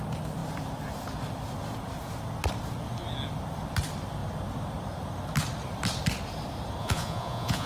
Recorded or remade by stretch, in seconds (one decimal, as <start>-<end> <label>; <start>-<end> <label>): 0.0-6.8 recorded; 6.8-7.7 remade